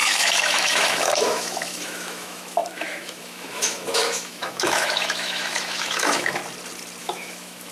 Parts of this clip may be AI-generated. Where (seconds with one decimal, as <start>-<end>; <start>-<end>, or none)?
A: 0.0-6.4; 7.0-7.7